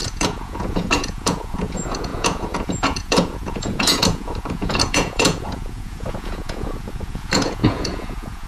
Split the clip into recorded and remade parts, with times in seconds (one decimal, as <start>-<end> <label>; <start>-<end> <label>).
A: 0.0-8.5 remade